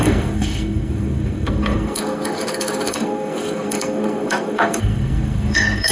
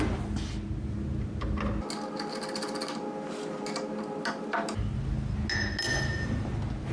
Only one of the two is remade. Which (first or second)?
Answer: first